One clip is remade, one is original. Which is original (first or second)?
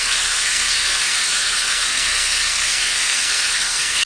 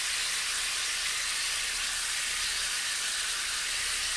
second